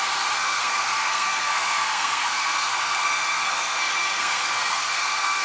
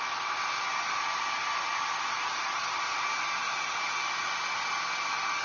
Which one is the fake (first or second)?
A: first